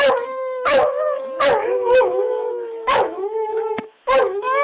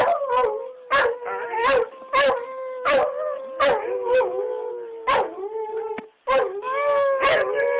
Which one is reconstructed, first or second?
first